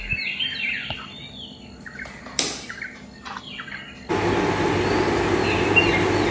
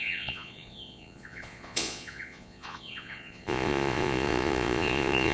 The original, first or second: first